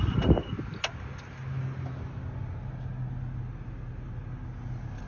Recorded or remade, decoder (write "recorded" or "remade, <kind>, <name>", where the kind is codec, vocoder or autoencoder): recorded